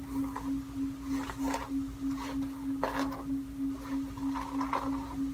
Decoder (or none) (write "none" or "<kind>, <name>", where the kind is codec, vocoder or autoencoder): none